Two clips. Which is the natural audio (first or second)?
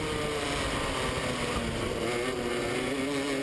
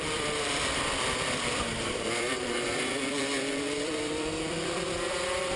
first